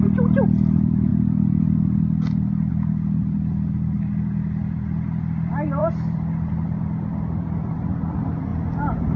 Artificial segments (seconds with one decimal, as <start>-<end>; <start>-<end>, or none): none